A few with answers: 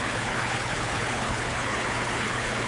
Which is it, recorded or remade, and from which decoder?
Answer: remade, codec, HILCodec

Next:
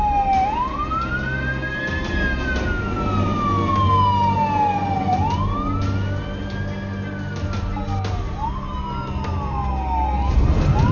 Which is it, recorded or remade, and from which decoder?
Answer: recorded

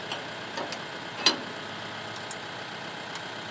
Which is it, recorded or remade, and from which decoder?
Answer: recorded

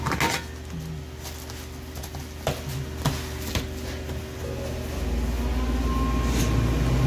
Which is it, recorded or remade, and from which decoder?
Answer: recorded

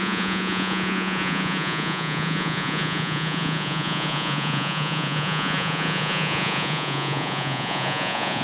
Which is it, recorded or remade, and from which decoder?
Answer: remade, vocoder, Vocos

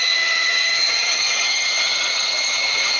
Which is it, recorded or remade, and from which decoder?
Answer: remade, vocoder, HiFi-GAN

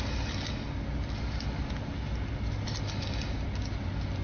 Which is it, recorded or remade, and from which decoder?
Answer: recorded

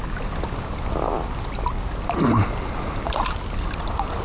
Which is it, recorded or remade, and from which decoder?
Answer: recorded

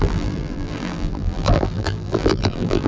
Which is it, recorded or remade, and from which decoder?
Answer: remade, vocoder, BigVGAN v2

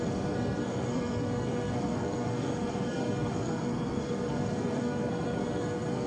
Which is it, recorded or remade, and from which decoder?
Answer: remade, codec, SNAC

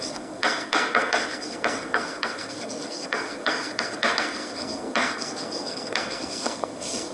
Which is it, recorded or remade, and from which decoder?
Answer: remade, codec, SNAC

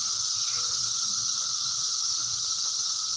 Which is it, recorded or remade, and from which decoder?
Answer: remade, vocoder, Vocos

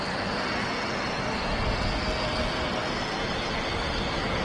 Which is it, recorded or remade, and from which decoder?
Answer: recorded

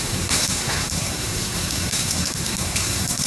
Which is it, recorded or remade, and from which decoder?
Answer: remade, codec, SNAC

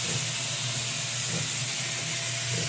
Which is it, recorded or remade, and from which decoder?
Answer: recorded